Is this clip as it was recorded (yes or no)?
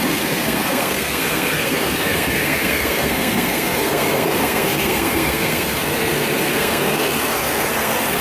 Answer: no